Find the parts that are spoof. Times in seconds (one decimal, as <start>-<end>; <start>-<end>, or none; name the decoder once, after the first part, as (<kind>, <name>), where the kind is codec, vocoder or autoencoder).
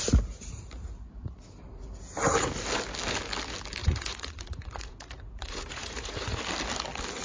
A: 3.8-6.4 (vocoder, Vocos)